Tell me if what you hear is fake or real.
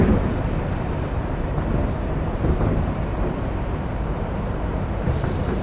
fake